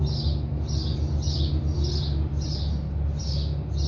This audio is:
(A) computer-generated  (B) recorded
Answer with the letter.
B